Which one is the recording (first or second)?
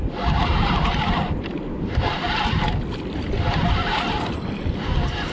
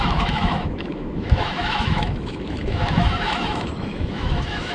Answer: first